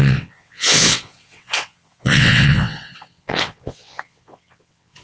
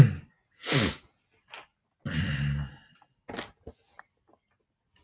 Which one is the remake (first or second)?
first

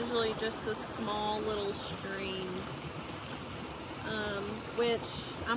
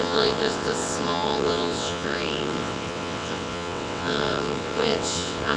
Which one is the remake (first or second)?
second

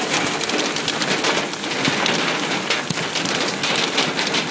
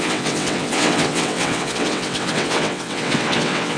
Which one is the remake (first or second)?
second